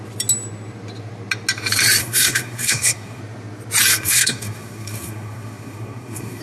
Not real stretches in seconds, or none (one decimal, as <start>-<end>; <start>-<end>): 2.0-3.2; 3.9-6.4